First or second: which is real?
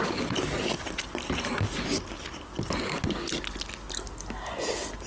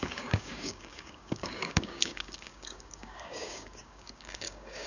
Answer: first